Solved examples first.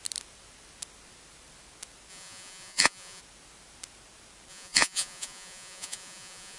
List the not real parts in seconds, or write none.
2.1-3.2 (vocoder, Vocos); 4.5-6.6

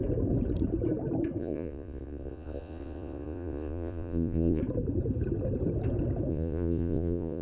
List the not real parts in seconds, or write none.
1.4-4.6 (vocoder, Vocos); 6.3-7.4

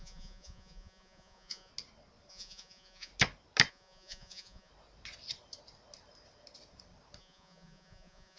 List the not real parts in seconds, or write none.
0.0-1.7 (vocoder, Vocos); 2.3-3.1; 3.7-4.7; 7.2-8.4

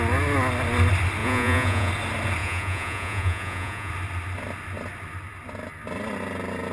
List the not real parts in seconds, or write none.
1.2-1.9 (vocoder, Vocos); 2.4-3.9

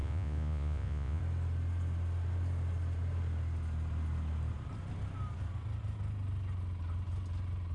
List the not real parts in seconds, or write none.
0.0-1.2 (vocoder, Vocos)

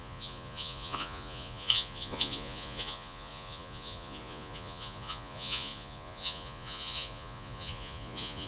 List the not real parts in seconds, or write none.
0.0-8.5 (vocoder, Vocos)

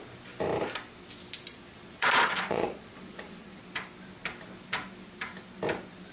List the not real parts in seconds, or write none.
1.5-3.6 (vocoder, Vocos)

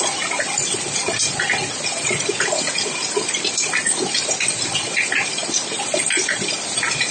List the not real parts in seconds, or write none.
none